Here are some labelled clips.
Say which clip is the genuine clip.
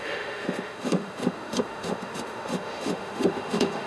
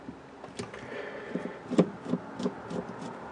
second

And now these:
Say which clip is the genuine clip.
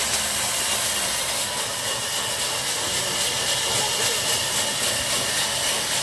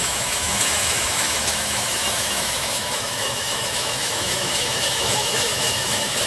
first